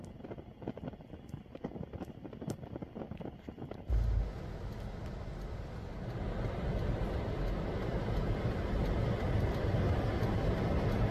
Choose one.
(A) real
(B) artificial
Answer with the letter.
A